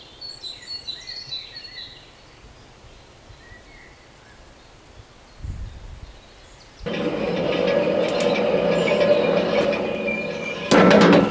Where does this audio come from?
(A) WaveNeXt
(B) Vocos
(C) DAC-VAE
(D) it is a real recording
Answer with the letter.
D